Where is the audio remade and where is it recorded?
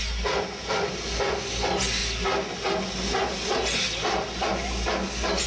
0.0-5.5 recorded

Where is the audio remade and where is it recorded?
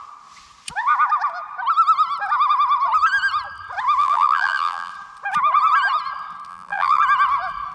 0.0-4.0 recorded; 4.0-4.9 remade; 4.9-6.5 recorded; 6.5-7.0 remade; 7.0-7.7 recorded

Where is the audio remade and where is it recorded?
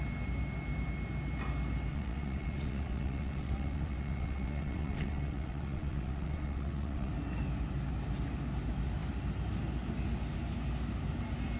0.0-1.9 recorded; 1.9-7.1 remade; 7.1-11.6 recorded